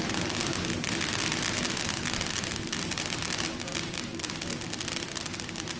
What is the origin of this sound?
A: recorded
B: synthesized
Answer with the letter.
A